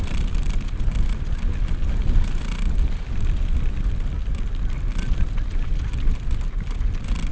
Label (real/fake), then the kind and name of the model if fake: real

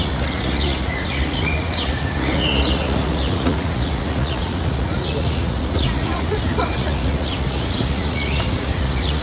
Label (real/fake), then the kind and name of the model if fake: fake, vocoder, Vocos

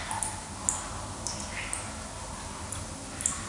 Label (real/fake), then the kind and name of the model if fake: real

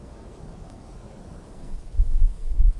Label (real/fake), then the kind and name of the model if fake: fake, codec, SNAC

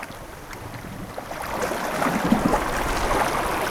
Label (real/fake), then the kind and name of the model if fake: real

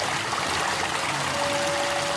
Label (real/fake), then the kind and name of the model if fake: real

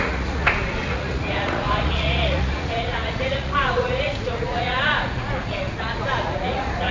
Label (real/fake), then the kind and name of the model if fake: fake, vocoder, Vocos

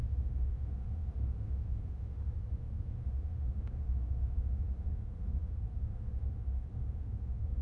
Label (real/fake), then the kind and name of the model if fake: fake, autoencoder, DAC-VAE